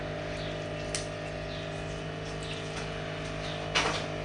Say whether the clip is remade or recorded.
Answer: recorded